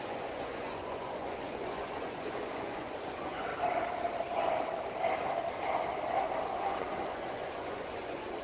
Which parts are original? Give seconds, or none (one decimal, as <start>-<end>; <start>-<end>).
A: 3.5-6.4